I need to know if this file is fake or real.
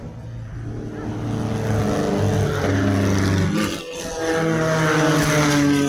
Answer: real